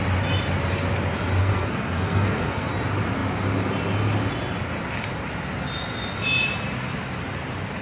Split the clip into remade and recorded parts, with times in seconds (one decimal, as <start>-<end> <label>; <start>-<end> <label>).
0.0-1.4 recorded; 1.4-2.7 remade; 2.7-7.8 recorded